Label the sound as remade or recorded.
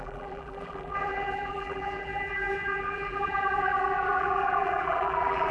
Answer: remade